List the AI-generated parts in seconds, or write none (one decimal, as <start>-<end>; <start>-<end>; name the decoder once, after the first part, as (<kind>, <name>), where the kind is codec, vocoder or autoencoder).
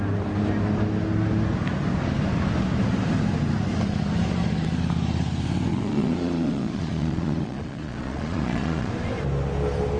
5.7-8.9 (vocoder, Vocos)